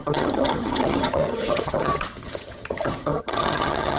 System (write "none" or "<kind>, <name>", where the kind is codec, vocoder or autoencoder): vocoder, HiFi-GAN